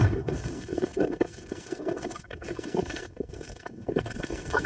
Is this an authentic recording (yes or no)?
no